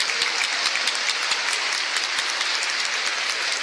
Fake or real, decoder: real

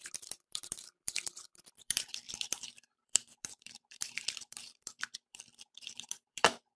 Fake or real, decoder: fake, vocoder, BigVGAN v2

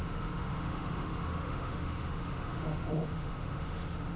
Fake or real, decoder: fake, autoencoder, DAC-VAE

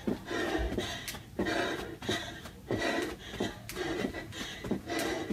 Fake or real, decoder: real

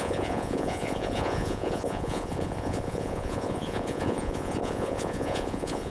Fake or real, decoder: fake, vocoder, Vocos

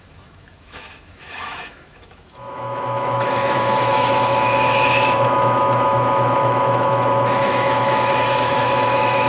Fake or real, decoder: fake, autoencoder, DAC-VAE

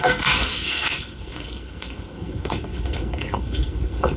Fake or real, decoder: fake, codec, SNAC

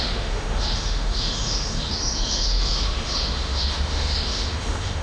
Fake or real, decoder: fake, autoencoder, DAC-VAE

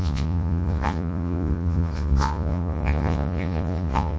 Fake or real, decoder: fake, vocoder, Vocos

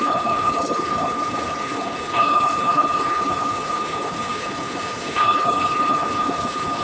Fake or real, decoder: fake, codec, HILCodec